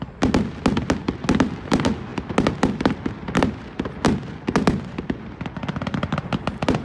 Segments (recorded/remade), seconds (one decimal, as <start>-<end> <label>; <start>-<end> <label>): 0.0-6.8 recorded